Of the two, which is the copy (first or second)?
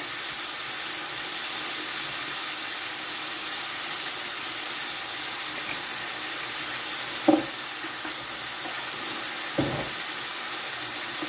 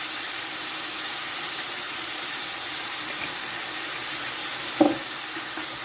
second